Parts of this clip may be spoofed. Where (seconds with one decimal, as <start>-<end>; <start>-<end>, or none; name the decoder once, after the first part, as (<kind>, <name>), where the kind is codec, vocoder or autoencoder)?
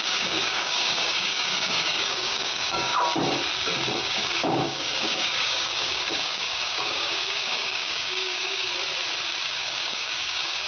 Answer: 0.0-2.9 (codec, DAC); 4.0-8.7; 9.4-10.7